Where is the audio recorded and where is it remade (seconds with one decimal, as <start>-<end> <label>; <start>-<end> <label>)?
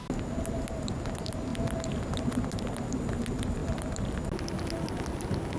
0.0-5.6 recorded